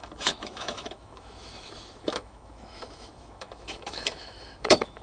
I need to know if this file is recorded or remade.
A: remade